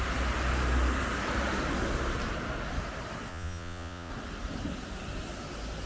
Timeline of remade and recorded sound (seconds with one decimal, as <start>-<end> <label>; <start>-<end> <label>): 0.0-3.3 recorded; 3.3-4.1 remade; 4.1-5.9 recorded